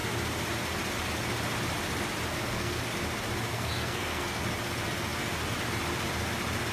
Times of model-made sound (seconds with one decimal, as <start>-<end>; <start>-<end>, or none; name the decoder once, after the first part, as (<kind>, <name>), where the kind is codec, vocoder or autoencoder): 2.3-2.8 (codec, SNAC); 3.5-4.4